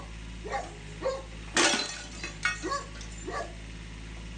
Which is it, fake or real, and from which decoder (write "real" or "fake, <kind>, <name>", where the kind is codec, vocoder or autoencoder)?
real